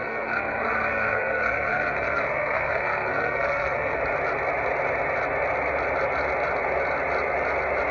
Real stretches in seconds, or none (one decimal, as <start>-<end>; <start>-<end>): 4.0-7.9